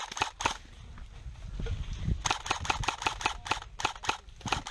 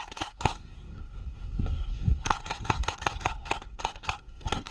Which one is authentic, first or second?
first